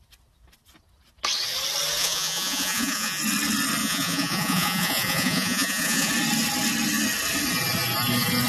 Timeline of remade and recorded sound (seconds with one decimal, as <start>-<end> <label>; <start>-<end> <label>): 0.0-2.0 recorded; 2.0-3.2 remade; 3.2-3.8 recorded; 3.8-6.1 remade; 6.1-8.5 recorded

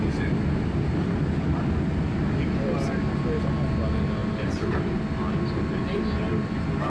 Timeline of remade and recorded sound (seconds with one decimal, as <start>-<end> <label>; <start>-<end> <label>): 0.0-6.9 recorded